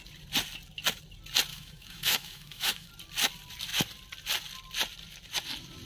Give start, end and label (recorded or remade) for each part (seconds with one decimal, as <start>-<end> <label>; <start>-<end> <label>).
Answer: 0.0-1.5 recorded; 1.5-2.9 remade; 2.9-5.9 recorded